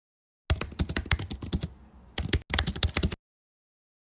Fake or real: real